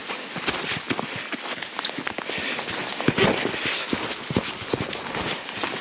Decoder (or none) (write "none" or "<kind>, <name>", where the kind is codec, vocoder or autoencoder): none